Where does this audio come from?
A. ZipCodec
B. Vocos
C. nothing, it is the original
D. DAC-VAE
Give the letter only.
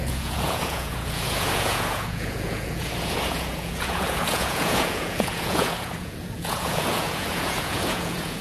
B